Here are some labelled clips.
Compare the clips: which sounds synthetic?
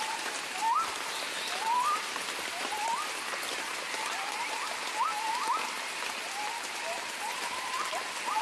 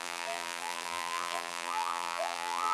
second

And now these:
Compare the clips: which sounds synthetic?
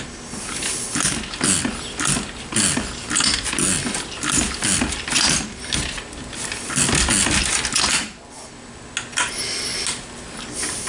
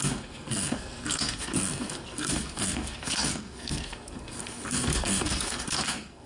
second